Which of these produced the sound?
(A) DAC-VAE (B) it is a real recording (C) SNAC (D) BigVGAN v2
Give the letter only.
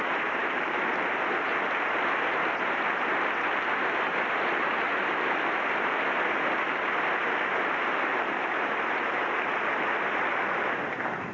B